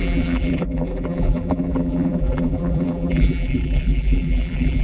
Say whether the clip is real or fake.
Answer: fake